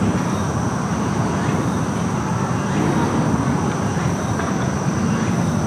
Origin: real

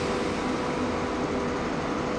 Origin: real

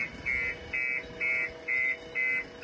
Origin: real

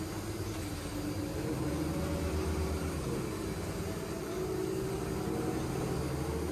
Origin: real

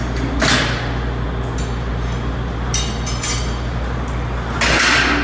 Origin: real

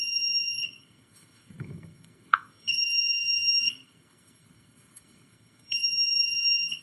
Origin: fake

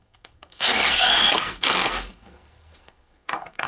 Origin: fake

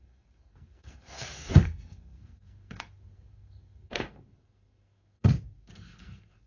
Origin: fake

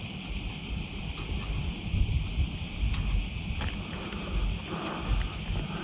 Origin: real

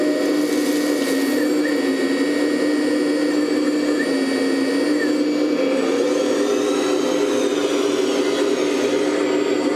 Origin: real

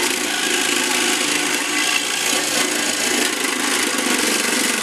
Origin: real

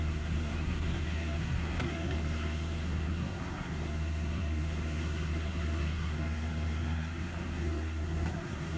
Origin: fake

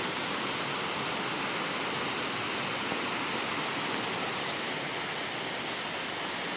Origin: real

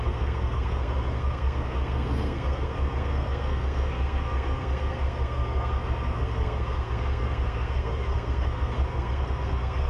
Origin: fake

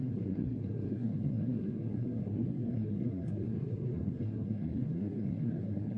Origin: fake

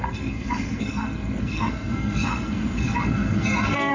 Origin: fake